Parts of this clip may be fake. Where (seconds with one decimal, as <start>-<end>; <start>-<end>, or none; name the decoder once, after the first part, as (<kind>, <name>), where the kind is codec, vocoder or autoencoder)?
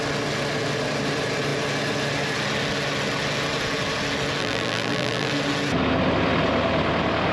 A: 4.4-5.3 (vocoder, BigVGAN v2)